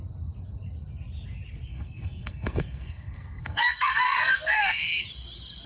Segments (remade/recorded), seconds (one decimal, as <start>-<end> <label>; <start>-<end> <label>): 0.0-1.7 recorded; 1.7-5.0 remade; 5.0-5.7 recorded